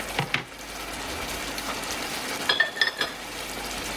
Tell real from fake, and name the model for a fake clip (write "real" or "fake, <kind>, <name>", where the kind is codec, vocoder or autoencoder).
real